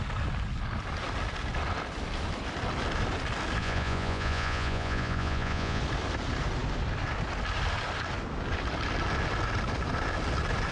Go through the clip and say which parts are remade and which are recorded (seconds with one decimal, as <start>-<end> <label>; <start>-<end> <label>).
0.0-3.6 recorded; 3.6-5.8 remade; 5.8-10.7 recorded

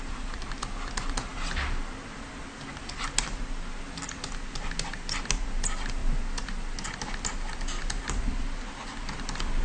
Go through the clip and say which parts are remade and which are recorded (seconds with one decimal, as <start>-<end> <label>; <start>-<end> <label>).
0.0-9.6 recorded

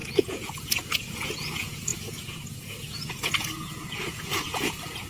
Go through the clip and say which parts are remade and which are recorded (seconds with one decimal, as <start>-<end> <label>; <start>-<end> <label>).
0.0-5.1 remade

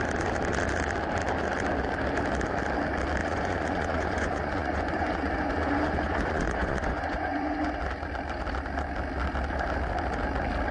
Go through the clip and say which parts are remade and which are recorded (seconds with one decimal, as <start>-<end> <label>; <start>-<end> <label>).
0.0-3.2 recorded; 3.2-7.8 remade; 7.8-10.7 recorded